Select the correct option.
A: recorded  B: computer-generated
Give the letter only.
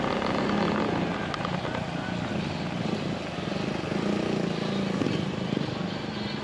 A